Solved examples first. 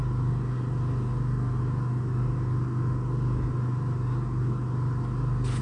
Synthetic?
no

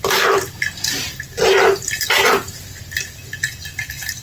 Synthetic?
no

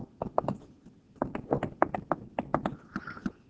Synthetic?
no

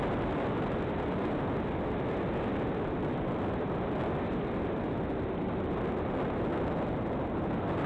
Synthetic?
no